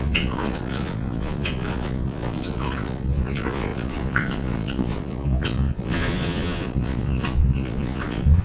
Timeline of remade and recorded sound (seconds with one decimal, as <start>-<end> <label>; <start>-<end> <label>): 0.0-8.4 remade